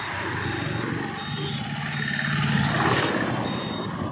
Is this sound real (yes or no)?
yes